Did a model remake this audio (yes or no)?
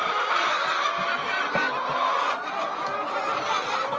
no